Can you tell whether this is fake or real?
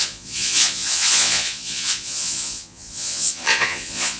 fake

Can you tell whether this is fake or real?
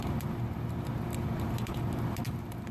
real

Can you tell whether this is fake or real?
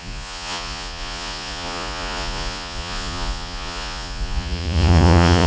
fake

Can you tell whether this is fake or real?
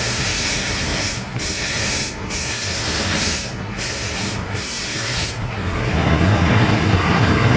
fake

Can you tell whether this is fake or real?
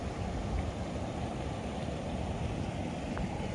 real